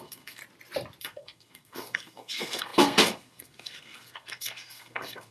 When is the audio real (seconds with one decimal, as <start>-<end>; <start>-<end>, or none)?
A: 0.4-1.0